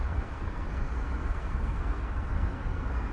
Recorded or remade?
remade